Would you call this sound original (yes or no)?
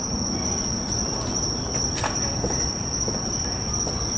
yes